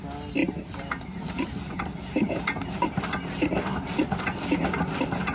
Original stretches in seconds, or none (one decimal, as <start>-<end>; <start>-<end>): 0.0-0.4; 3.0-5.3